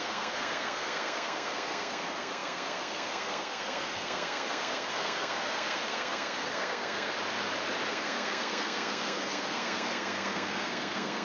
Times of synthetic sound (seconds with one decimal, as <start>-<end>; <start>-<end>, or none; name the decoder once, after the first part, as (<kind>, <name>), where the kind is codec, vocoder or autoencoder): 0.0-7.1 (codec, SNAC); 7.9-11.2